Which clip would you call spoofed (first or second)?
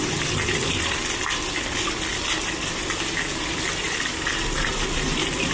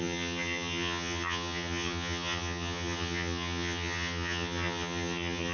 second